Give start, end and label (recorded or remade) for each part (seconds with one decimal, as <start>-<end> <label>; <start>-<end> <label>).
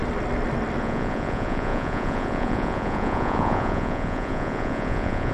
0.0-0.8 recorded; 0.8-5.3 remade